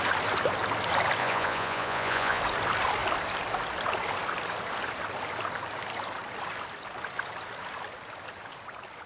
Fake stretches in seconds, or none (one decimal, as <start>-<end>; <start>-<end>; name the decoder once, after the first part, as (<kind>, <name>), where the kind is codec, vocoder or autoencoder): 1.2-2.4 (vocoder, Vocos)